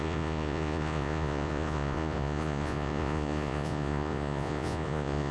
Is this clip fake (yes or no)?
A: yes